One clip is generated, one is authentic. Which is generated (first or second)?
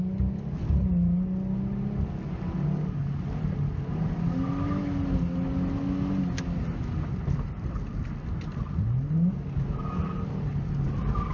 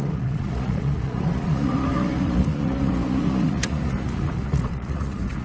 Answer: second